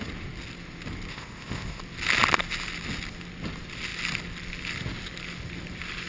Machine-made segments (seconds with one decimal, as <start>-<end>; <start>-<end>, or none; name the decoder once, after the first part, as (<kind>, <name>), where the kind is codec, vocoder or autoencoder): 1.1-1.8 (codec, ZipCodec)